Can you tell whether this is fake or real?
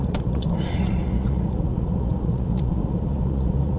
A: fake